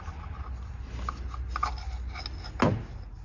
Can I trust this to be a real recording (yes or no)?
yes